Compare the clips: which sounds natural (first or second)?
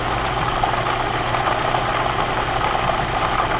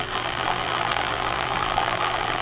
first